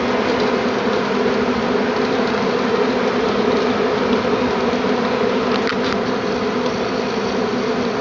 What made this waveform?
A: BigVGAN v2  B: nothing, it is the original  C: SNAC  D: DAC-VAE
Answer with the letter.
B